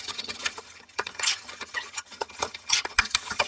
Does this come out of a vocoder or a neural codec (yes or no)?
yes